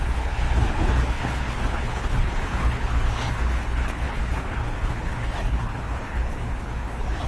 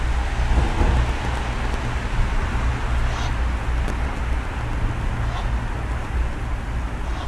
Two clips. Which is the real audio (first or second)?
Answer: second